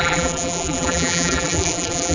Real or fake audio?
fake